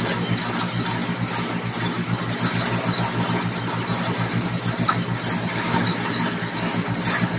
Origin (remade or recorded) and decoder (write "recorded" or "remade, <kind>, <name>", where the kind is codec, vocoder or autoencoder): recorded